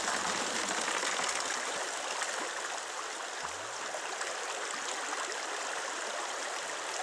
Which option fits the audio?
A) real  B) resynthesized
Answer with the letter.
A